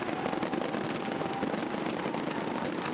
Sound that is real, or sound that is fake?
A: real